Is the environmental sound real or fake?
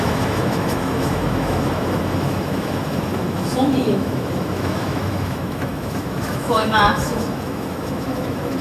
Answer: fake